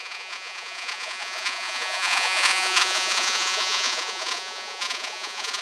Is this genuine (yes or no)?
no